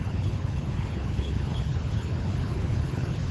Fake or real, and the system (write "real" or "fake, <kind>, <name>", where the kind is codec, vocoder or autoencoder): fake, codec, HILCodec